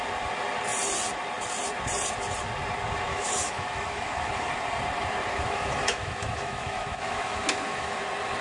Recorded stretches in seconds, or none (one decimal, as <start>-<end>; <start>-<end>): 0.0-3.1; 4.5-5.3; 8.0-8.4